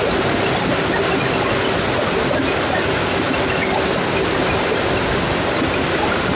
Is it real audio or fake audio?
real